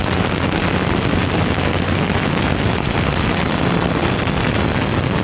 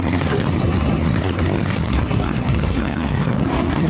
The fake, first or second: second